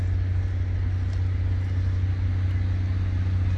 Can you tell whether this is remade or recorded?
recorded